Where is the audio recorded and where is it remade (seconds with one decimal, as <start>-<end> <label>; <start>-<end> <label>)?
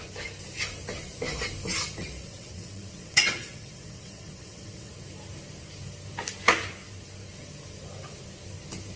0.0-2.0 recorded; 2.0-4.9 remade; 4.9-9.0 recorded